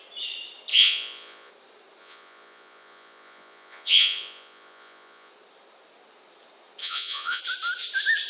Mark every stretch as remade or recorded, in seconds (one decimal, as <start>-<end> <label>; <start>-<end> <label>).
0.0-0.7 recorded; 0.7-1.5 remade; 1.5-2.0 recorded; 2.0-5.3 remade; 5.3-6.8 recorded; 6.8-7.4 remade; 7.4-8.3 recorded